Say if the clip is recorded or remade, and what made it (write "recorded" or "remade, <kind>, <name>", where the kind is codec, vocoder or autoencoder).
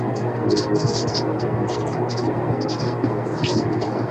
remade, codec, SNAC